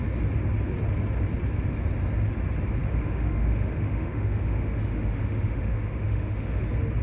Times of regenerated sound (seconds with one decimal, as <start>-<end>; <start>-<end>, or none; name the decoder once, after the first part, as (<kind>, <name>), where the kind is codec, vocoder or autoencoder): 2.8-6.6 (autoencoder, DAC-VAE)